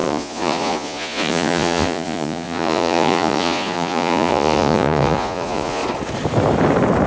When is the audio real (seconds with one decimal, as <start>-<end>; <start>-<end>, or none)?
5.8-7.1